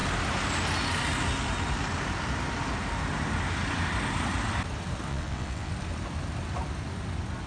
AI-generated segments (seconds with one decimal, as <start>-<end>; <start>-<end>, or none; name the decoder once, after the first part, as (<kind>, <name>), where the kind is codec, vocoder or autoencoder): 5.1-5.7 (vocoder, WaveNeXt)